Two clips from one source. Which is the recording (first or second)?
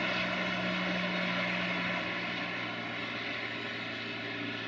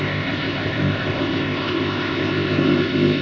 first